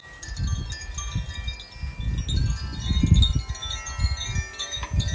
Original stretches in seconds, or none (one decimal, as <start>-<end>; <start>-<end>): 0.0-5.1

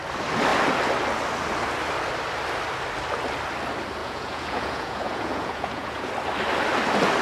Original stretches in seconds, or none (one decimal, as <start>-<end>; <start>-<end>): 0.0-4.0; 6.1-7.2

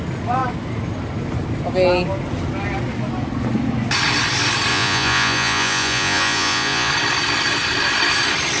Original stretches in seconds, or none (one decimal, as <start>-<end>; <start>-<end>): 0.0-4.7; 6.9-8.6

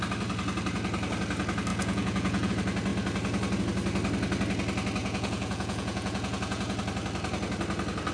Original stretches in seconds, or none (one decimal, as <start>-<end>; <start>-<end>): 0.0-1.7; 2.5-5.0; 6.8-8.1

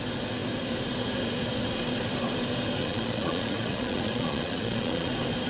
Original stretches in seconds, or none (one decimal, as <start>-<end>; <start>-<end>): 0.0-2.8; 5.1-5.5